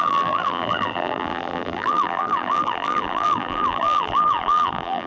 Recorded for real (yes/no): no